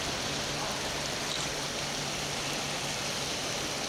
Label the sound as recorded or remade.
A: recorded